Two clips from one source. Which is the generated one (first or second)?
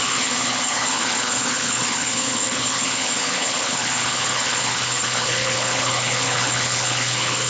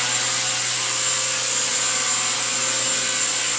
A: first